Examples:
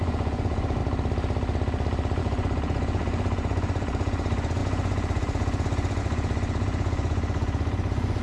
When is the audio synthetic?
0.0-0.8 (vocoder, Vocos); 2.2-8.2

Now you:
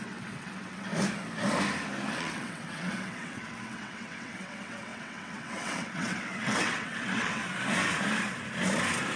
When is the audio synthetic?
0.0-0.9 (vocoder, WaveNeXt); 2.1-7.4

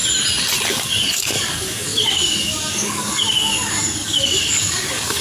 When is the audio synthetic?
0.7-5.2 (codec, DAC)